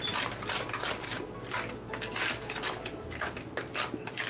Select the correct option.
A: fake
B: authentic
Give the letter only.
B